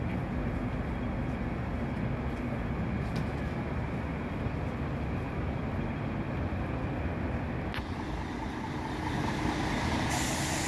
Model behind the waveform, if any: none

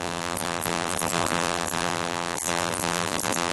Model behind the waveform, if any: vocoder, BigVGAN v2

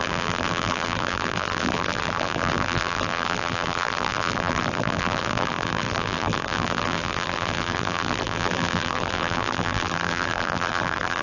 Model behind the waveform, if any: vocoder, BigVGAN v2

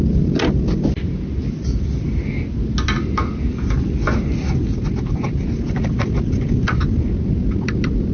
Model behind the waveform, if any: none